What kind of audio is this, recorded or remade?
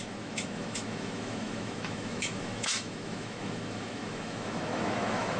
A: remade